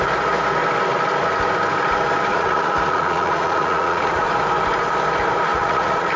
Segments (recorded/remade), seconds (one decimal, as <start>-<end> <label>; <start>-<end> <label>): 0.0-2.3 recorded; 2.3-4.3 remade; 4.3-5.5 recorded; 5.5-6.2 remade

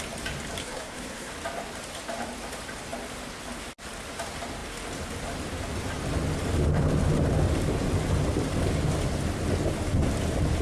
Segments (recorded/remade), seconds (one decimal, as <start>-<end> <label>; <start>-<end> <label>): 0.0-0.6 recorded; 0.6-1.3 remade; 1.3-10.6 recorded

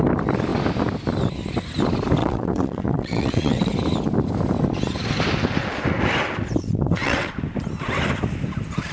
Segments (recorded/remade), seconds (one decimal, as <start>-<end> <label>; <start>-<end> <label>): 0.0-2.2 recorded; 2.2-3.7 remade; 3.7-6.6 recorded; 6.6-7.3 remade; 7.3-8.9 recorded

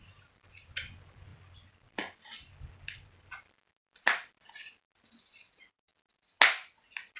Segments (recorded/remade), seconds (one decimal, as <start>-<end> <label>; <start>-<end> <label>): 0.0-7.2 recorded

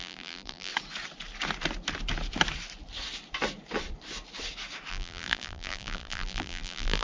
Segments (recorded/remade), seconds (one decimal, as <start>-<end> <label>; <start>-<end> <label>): 0.0-0.7 remade; 0.7-4.9 recorded; 4.9-7.0 remade

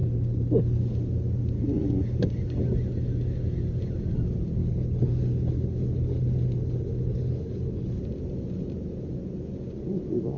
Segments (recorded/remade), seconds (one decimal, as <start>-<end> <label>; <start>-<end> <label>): 0.0-0.8 remade; 0.8-4.6 recorded; 4.6-8.0 remade; 8.0-10.4 recorded

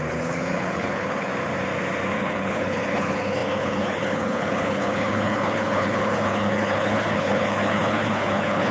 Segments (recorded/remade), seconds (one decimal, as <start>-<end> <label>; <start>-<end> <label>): 0.0-1.3 remade; 1.3-2.2 recorded; 2.2-8.7 remade

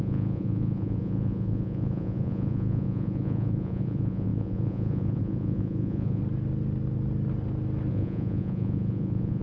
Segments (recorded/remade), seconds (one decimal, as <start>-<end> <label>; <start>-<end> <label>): 0.0-6.2 remade; 6.2-7.9 recorded; 7.9-9.4 remade